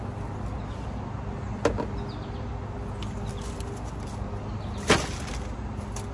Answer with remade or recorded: recorded